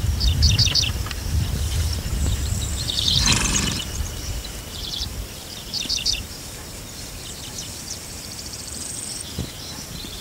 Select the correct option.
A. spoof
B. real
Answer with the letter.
A